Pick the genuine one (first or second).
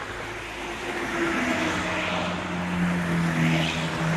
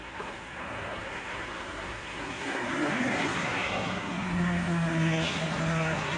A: first